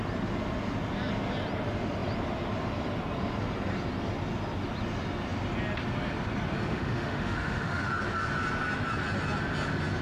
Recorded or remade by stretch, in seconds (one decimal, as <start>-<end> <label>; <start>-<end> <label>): 0.0-6.7 recorded; 6.7-7.9 remade; 7.9-10.0 recorded